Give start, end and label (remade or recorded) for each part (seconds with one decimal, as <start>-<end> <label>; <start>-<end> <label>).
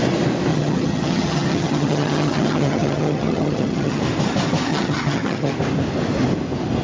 0.0-0.5 recorded; 0.5-4.0 remade; 4.0-4.7 recorded; 4.7-5.5 remade; 5.5-6.8 recorded